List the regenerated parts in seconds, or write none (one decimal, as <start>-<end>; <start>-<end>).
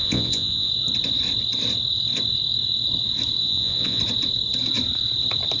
0.0-0.7; 3.4-4.0